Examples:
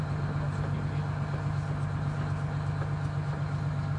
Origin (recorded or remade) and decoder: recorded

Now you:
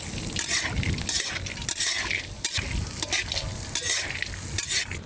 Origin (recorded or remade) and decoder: recorded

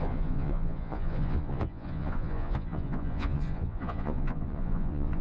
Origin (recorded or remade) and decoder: remade, vocoder, Vocos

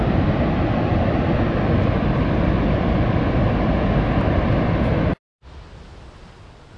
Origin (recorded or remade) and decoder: recorded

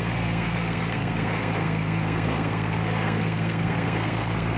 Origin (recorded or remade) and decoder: remade, codec, SNAC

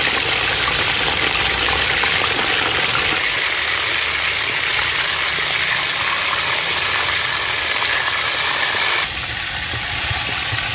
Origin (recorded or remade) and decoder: recorded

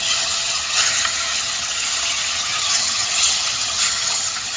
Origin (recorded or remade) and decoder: remade, vocoder, HiFi-GAN